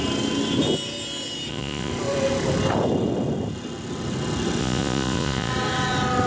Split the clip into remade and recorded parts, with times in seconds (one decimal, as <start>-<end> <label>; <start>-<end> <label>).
0.0-1.5 recorded; 1.5-1.9 remade; 1.9-4.6 recorded; 4.6-5.5 remade; 5.5-6.3 recorded